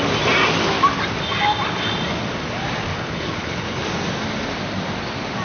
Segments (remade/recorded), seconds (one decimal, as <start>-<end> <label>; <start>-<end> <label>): 0.0-2.9 recorded; 2.9-3.8 remade; 3.8-5.4 recorded